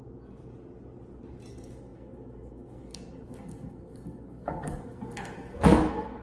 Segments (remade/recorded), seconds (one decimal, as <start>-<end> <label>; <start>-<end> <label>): 0.0-1.5 recorded; 1.5-6.2 remade